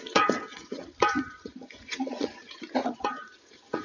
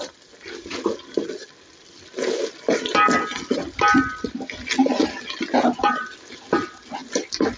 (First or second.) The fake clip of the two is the first